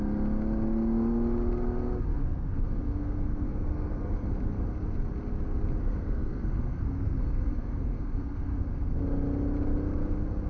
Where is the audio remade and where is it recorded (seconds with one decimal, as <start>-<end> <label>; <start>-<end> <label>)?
0.0-2.1 recorded; 2.1-4.3 remade; 4.3-5.8 recorded; 5.8-8.9 remade; 8.9-10.5 recorded